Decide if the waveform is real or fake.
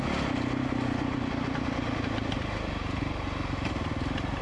real